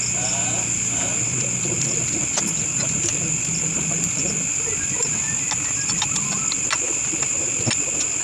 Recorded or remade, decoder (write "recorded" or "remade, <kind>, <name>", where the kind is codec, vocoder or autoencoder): recorded